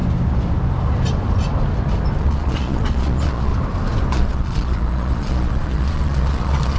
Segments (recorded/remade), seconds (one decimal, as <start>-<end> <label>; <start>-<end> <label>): 0.0-2.2 recorded; 2.2-3.5 remade; 3.5-4.1 recorded; 4.1-6.8 remade